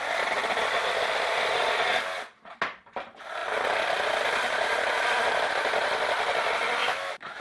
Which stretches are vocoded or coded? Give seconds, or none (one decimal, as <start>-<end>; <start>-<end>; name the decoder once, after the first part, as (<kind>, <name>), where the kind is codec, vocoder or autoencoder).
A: 6.8-7.4 (autoencoder, DAC-VAE)